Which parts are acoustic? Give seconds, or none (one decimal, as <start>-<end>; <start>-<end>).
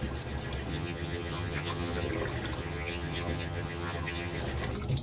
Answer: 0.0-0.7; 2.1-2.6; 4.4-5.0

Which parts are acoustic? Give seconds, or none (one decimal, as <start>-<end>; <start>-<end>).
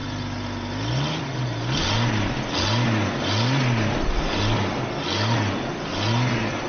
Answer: 0.0-6.7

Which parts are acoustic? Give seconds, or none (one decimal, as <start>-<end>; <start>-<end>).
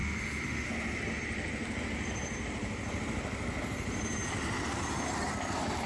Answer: 0.7-5.9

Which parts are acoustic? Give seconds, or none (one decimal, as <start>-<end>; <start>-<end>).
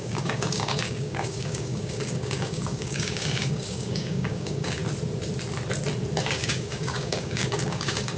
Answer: 4.8-6.2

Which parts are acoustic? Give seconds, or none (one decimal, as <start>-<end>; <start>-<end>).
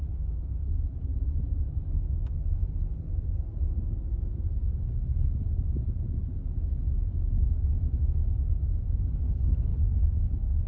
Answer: 2.6-6.9; 9.7-10.2